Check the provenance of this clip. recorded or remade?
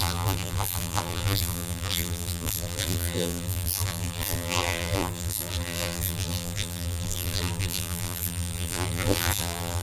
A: remade